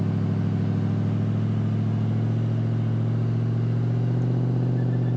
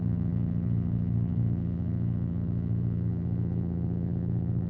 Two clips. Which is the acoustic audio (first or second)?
first